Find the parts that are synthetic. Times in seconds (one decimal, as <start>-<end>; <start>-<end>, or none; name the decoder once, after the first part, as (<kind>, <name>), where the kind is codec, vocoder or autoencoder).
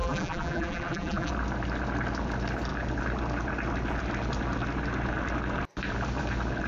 0.0-1.3 (vocoder, BigVGAN v2)